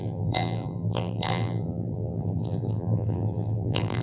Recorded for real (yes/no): no